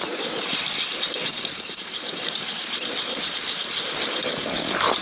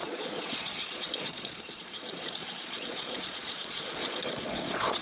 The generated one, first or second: second